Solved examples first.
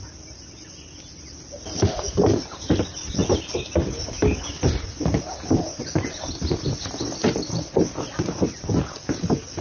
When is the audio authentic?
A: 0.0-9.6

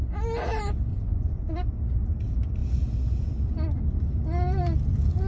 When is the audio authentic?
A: 0.0-0.9; 1.4-5.3